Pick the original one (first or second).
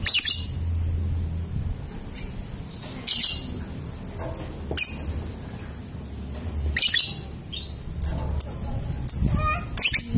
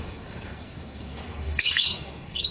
first